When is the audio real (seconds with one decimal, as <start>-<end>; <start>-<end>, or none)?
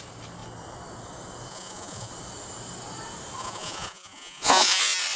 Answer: 0.0-1.5; 2.1-3.4; 4.8-5.2